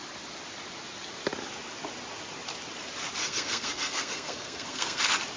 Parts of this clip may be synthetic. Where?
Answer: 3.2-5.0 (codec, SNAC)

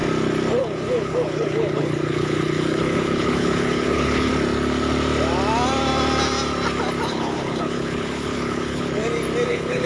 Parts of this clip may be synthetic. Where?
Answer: 0.6-4.3 (codec, HILCodec); 7.1-9.0; 9.5-9.9